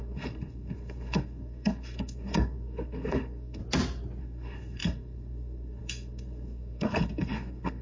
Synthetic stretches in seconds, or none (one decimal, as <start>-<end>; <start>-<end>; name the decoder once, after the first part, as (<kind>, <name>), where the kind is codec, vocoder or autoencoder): 0.0-3.6 (codec, SNAC); 4.2-7.8